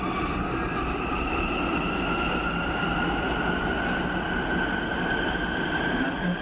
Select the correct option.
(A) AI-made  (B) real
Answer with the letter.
B